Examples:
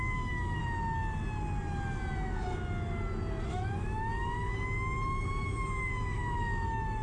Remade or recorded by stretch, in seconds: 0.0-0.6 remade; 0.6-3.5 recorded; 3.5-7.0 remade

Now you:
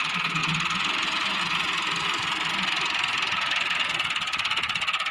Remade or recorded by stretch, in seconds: 0.0-5.1 recorded

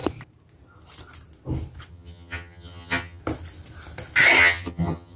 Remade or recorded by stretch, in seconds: 0.0-1.9 recorded; 1.9-3.2 remade; 3.2-4.4 recorded; 4.4-5.2 remade

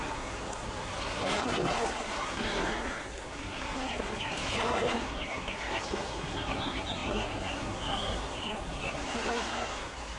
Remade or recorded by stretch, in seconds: 0.0-10.2 remade

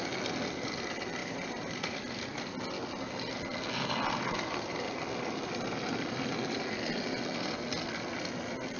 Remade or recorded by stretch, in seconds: 0.0-1.2 recorded; 1.2-1.8 remade; 1.8-8.8 recorded